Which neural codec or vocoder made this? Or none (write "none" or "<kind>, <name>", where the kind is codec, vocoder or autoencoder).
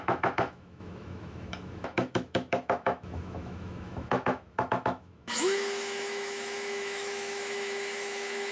autoencoder, DAC-VAE